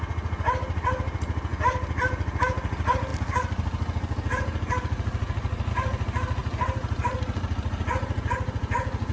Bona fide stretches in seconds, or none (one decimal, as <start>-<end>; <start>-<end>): 0.0-6.4; 8.5-9.1